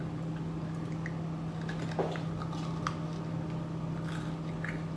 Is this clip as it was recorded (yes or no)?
yes